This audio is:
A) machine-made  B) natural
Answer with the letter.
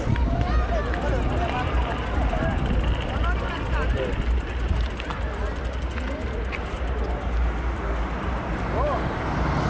B